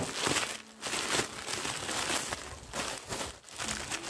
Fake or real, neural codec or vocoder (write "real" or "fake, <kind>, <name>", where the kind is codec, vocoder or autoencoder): real